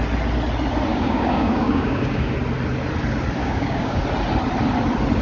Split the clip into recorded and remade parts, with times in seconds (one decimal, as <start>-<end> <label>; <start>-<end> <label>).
0.0-0.9 recorded; 0.9-2.3 remade; 2.3-3.4 recorded; 3.4-4.0 remade; 4.0-5.2 recorded